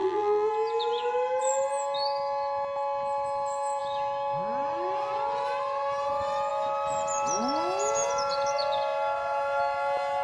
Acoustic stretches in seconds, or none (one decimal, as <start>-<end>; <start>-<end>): 0.5-10.2